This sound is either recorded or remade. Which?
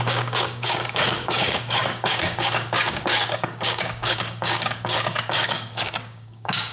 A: remade